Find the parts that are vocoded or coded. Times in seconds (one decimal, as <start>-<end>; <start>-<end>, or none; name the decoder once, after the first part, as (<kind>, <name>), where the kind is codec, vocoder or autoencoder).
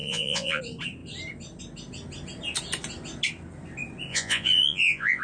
0.0-0.6 (vocoder, Vocos); 4.1-5.2